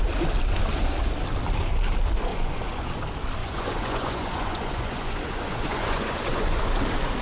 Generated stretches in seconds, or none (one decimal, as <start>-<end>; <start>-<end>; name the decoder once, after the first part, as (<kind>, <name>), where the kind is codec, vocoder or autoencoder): 2.3-2.9 (vocoder, Vocos); 3.4-6.7